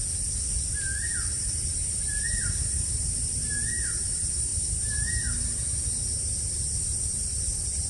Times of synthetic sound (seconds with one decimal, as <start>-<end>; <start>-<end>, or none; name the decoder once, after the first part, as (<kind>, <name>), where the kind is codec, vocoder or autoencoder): none